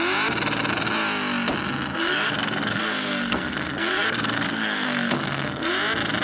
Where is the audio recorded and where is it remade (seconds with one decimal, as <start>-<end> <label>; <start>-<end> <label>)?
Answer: 0.0-2.0 recorded; 2.0-5.7 remade; 5.7-6.2 recorded